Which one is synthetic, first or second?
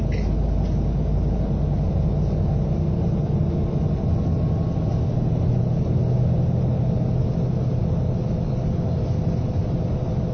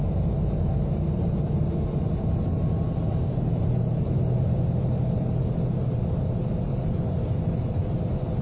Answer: second